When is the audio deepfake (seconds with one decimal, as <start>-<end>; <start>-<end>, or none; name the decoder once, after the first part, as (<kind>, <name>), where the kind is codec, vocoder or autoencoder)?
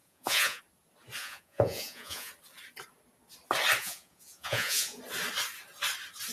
0.0-0.6 (vocoder, Vocos); 1.2-2.3; 3.8-5.0